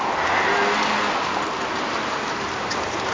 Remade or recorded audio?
recorded